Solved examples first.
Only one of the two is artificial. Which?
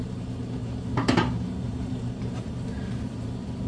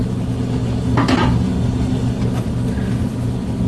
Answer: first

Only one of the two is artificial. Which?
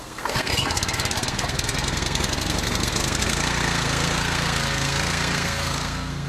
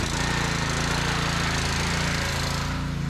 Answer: first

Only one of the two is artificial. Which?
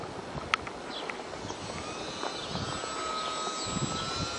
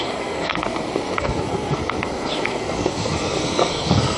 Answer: second